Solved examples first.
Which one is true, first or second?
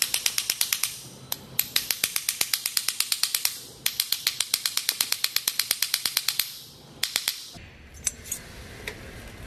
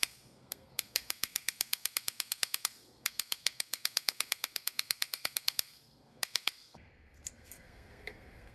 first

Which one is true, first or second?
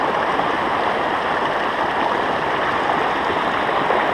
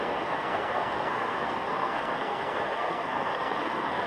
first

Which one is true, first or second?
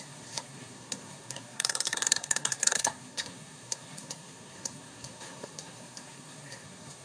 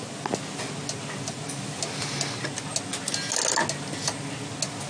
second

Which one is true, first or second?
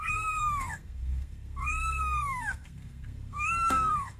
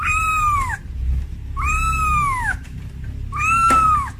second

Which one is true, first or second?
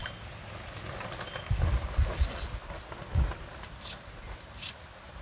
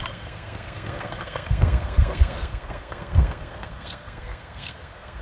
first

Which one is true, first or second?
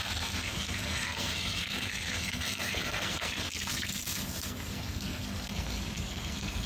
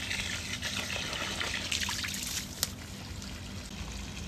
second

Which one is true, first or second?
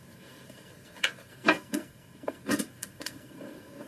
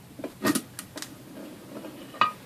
second